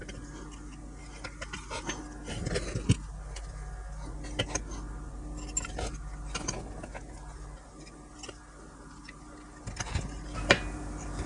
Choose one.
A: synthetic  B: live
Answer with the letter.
B